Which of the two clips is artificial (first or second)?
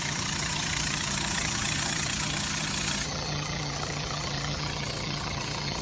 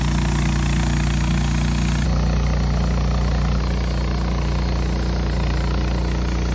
first